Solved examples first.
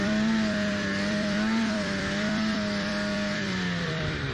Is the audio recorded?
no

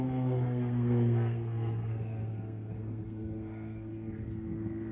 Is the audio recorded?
no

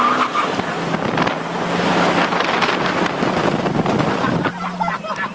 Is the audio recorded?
yes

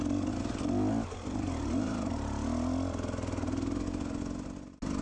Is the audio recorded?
yes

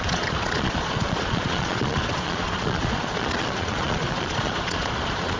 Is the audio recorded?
no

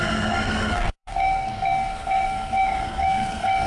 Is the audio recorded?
no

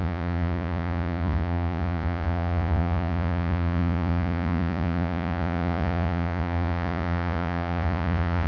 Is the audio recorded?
no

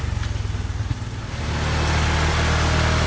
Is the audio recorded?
yes